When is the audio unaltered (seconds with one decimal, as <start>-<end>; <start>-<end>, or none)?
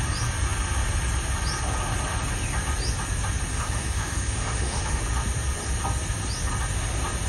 0.0-3.5; 5.0-7.3